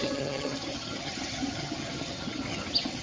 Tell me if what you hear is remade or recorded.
remade